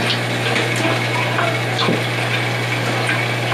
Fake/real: real